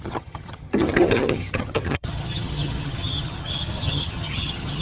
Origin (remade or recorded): remade